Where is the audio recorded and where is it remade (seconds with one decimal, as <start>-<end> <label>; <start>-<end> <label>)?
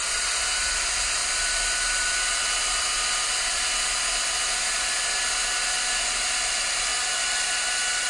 0.0-8.1 recorded